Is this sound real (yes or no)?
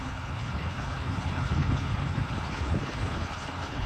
no